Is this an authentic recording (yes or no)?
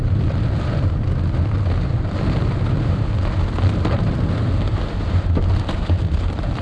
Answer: no